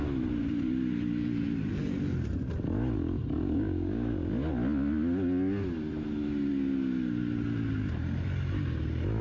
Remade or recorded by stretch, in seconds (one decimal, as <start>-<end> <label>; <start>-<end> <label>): 0.0-3.4 recorded; 3.4-4.3 remade; 4.3-9.2 recorded

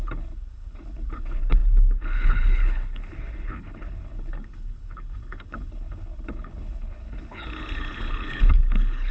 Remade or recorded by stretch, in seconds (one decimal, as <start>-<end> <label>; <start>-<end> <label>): 0.0-9.1 remade

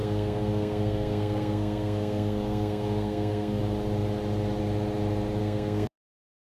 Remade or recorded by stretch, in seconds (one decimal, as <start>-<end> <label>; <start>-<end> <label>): 0.0-3.6 remade; 3.6-5.4 recorded; 5.4-6.6 remade

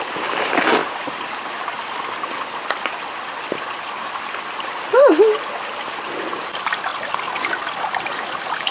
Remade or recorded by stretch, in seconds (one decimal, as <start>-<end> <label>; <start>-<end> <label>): 0.0-0.8 remade; 0.8-5.9 recorded; 5.9-8.7 remade

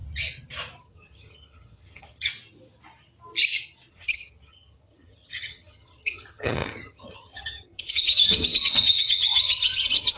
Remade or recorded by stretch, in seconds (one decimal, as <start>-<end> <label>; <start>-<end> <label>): 0.0-0.8 recorded; 0.8-2.3 remade; 2.3-3.9 recorded; 3.9-10.2 remade